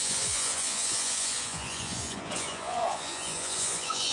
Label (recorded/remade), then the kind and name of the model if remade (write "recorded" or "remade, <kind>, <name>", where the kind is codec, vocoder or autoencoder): remade, vocoder, Vocos